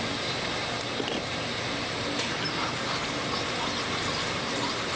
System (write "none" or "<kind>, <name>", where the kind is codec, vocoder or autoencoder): vocoder, BigVGAN v2